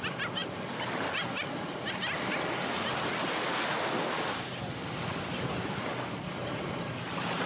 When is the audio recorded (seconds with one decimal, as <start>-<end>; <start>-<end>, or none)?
0.0-7.5

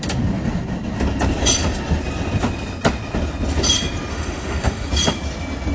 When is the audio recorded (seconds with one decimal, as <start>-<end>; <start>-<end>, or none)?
0.0-4.1; 4.9-5.7

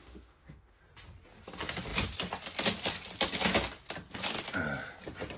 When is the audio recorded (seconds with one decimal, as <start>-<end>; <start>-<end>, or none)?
0.8-5.4

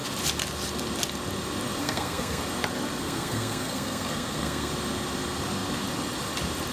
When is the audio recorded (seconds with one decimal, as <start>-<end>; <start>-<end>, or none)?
0.0-1.8; 2.4-3.0; 4.7-6.7

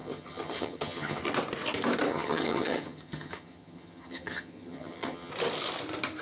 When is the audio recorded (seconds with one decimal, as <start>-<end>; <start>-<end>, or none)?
1.2-2.1; 5.3-6.2